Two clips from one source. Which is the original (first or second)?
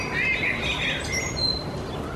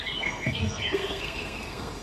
first